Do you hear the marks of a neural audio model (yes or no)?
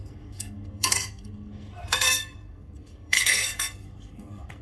yes